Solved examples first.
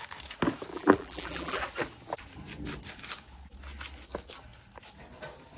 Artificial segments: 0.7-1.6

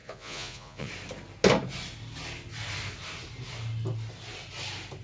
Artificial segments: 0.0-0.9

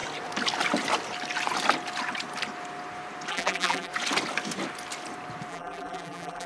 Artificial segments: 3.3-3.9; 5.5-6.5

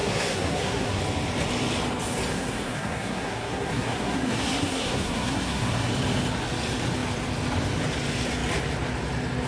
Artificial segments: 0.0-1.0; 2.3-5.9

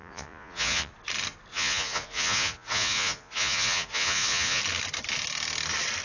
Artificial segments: 0.0-0.9; 1.5-4.6

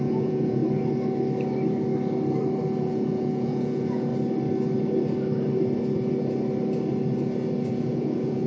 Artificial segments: 0.0-0.6; 2.8-4.1; 7.7-8.5

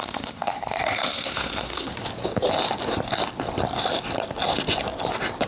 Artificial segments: 0.0-1.9